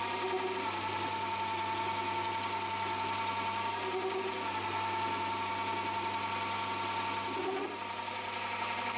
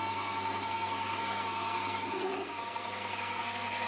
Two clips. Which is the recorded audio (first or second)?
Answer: first